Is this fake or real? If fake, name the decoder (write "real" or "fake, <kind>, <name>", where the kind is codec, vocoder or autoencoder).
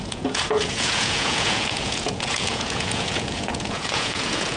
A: fake, vocoder, Vocos